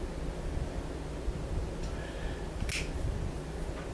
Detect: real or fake real